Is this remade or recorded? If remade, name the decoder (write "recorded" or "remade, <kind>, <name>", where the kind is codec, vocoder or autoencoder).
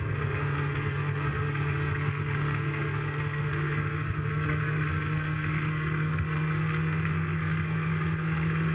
remade, codec, SNAC